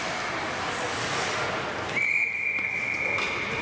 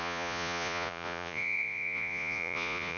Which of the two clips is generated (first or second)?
second